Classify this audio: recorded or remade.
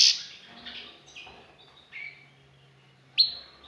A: recorded